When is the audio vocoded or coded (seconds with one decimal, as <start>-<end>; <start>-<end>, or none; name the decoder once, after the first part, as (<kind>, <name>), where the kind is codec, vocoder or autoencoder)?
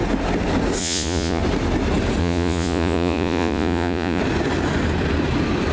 0.8-1.4 (vocoder, Vocos); 2.2-4.2